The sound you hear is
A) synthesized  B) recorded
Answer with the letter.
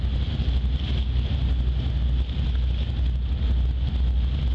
B